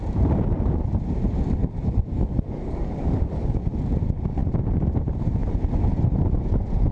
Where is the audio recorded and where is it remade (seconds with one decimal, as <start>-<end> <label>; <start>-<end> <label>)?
0.0-1.6 recorded; 1.6-3.6 remade; 3.6-6.9 recorded